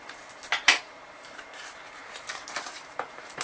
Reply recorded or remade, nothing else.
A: remade